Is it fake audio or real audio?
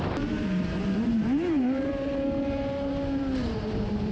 fake